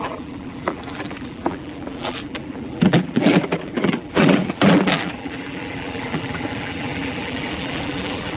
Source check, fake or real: fake